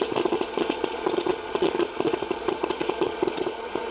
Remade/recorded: remade